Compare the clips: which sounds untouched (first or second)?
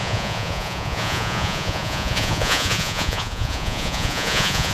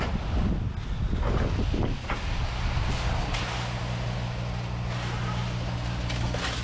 second